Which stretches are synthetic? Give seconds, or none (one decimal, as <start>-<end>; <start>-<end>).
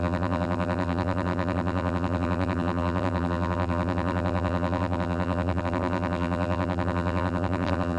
0.0-8.0